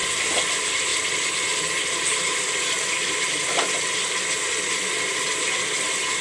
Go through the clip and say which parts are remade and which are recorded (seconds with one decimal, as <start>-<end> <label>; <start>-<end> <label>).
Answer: 0.0-6.2 recorded